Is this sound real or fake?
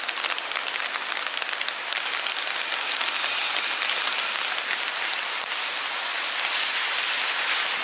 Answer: real